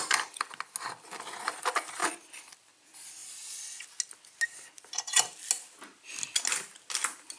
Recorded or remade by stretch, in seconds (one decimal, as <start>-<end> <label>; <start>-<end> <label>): 0.0-2.0 recorded; 2.0-2.5 remade; 2.5-7.4 recorded